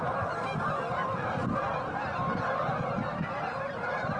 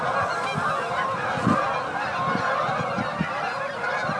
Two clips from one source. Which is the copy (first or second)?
first